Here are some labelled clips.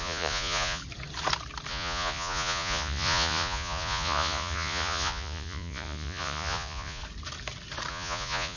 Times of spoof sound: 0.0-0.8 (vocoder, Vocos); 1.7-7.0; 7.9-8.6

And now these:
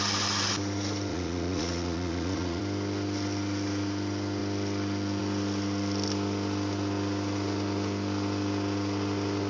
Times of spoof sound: 1.1-2.6 (vocoder, Vocos)

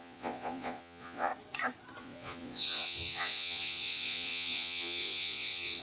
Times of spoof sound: 0.0-1.3 (vocoder, Vocos); 2.0-5.8

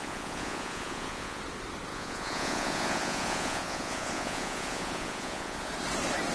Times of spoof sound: 0.0-1.4 (vocoder, Vocos); 1.9-5.7

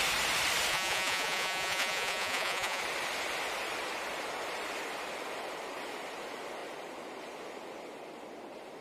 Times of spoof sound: 0.7-2.8 (vocoder, Vocos)

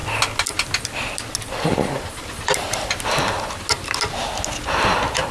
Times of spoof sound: none

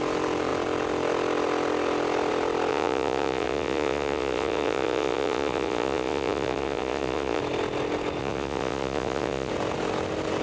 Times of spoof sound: 2.7-7.4 (vocoder, Vocos); 8.2-9.5

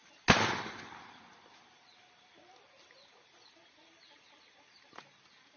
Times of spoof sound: none